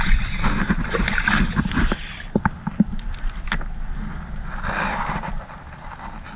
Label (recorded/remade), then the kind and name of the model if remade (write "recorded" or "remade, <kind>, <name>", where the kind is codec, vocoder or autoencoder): recorded